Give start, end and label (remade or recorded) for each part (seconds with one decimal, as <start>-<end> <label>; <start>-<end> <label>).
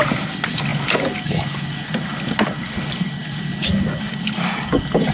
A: 0.0-5.1 recorded